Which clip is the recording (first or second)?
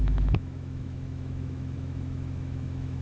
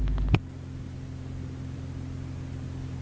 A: second